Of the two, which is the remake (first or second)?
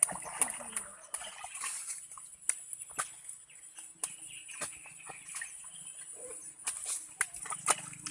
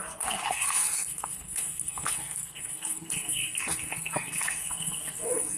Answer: second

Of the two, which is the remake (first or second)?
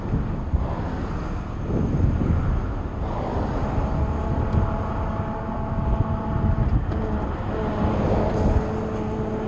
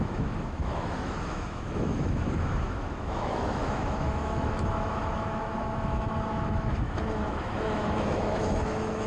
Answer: second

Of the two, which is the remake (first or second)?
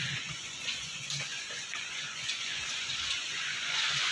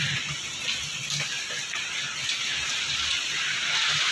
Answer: first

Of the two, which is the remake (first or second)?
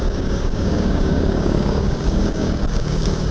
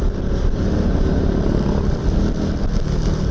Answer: first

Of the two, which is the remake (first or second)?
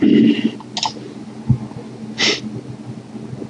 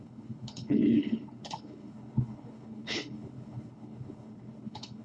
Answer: second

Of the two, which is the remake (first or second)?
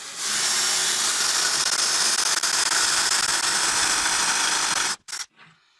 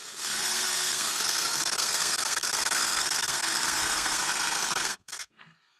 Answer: second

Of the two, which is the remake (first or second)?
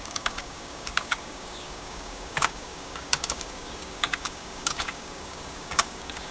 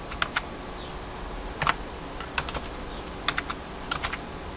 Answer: first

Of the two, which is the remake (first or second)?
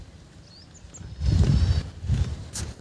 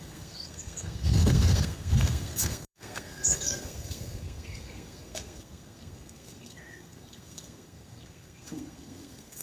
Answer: second